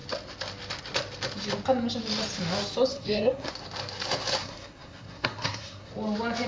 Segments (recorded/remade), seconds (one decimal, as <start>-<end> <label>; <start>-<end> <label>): 0.0-2.9 recorded; 2.9-3.5 remade; 3.5-4.4 recorded; 4.4-5.9 remade; 5.9-6.5 recorded